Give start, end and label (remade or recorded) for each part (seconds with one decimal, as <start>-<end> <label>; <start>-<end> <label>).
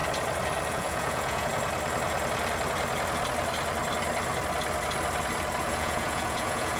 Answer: 0.0-0.7 recorded; 0.7-1.5 remade; 1.5-5.6 recorded; 5.6-6.8 remade